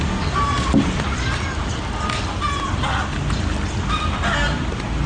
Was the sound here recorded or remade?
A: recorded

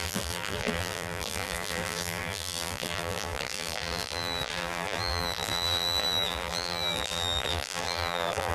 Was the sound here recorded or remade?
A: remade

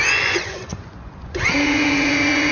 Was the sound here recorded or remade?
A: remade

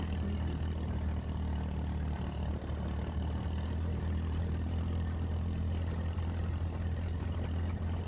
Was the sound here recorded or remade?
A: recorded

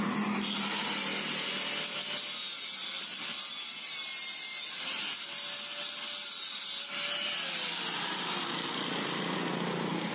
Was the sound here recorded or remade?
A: recorded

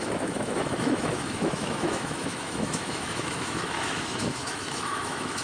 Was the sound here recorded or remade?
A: remade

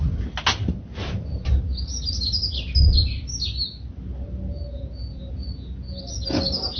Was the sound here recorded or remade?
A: recorded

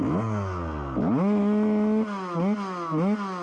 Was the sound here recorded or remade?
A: recorded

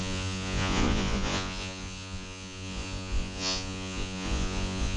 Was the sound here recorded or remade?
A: remade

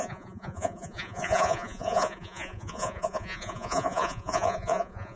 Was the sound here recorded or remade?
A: remade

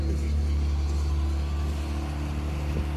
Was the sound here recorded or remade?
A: recorded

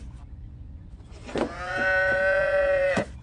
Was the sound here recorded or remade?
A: remade